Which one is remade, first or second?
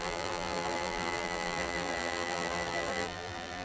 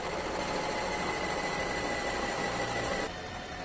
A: first